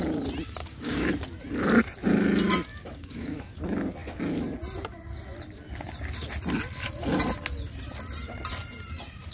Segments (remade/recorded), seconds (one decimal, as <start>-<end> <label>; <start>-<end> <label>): 0.0-0.6 recorded; 0.6-1.1 remade; 1.1-2.7 recorded; 2.7-3.6 remade; 3.6-9.3 recorded